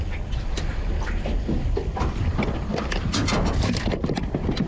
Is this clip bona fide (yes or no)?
yes